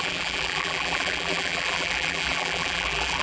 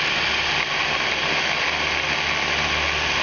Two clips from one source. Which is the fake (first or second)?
first